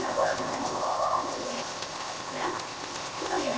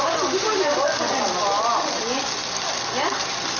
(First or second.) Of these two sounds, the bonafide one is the second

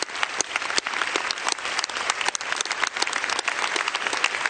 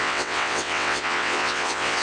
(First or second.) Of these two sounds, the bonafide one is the first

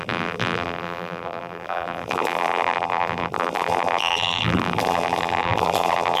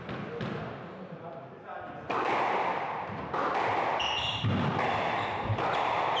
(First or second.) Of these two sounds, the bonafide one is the second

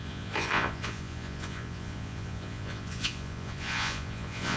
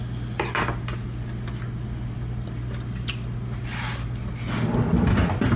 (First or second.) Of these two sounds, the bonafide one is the second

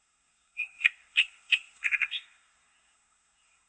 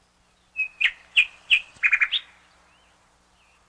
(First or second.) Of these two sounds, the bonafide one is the second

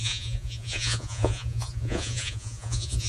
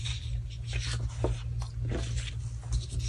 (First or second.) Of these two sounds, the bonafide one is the second